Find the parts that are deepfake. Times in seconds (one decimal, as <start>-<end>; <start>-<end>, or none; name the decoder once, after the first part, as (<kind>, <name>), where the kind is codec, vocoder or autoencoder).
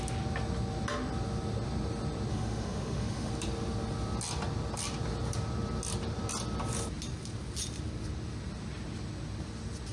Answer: 2.3-3.3 (autoencoder, DAC-VAE)